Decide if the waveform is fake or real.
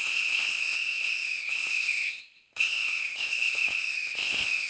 fake